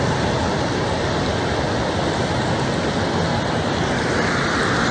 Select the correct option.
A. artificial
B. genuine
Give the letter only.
B